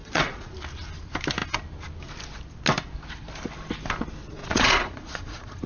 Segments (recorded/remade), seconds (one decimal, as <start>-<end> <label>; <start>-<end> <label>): 0.0-0.5 remade; 0.5-4.4 recorded; 4.4-5.7 remade